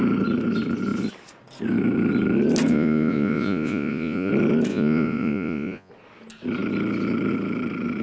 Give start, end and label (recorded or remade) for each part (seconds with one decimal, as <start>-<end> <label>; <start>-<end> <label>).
0.0-2.7 recorded; 2.7-4.3 remade; 4.3-4.7 recorded; 4.7-5.9 remade; 5.9-8.0 recorded